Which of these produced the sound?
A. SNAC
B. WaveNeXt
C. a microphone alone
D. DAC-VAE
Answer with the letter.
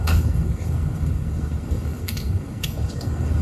A